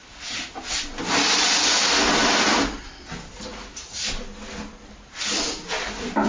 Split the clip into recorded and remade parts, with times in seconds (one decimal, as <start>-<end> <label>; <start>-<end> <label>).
0.0-6.3 recorded